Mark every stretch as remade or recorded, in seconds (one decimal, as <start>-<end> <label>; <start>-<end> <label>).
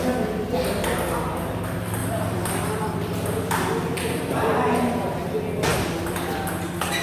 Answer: 0.0-2.0 recorded; 2.0-2.6 remade; 2.6-4.3 recorded; 4.3-5.2 remade; 5.2-5.7 recorded; 5.7-6.2 remade; 6.2-7.0 recorded